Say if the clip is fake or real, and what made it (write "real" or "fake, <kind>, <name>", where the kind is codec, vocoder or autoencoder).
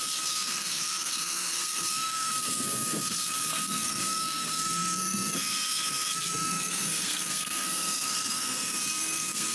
fake, codec, SNAC